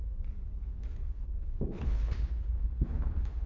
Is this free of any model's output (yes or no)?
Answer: no